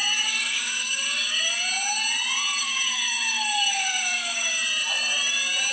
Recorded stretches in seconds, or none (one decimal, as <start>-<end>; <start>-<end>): 1.5-2.6; 4.5-5.7